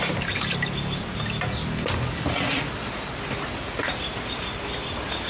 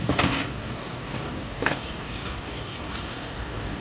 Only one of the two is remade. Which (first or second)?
second